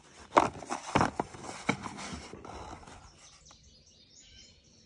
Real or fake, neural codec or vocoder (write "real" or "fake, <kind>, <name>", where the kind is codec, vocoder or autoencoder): real